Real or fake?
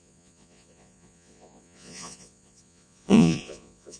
fake